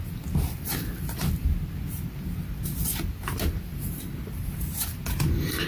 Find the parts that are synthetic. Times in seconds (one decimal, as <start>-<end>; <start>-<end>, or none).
none